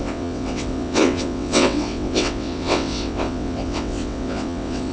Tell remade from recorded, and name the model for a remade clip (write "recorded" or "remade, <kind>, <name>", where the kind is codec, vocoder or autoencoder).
remade, vocoder, WaveNeXt